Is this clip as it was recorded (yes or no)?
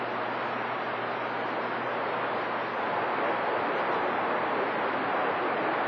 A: yes